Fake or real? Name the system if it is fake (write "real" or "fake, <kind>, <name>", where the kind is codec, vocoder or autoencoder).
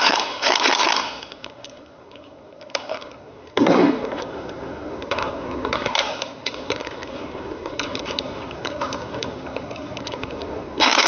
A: fake, codec, SNAC